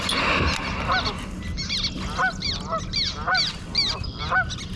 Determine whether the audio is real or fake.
real